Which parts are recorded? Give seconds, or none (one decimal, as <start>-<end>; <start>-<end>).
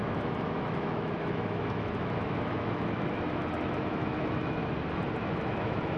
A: 4.6-5.2